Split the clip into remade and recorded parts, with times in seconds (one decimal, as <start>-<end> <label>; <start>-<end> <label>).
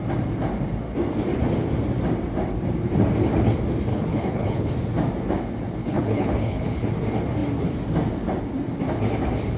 0.0-3.9 recorded; 3.9-4.7 remade; 4.7-5.8 recorded; 5.8-6.9 remade; 6.9-9.6 recorded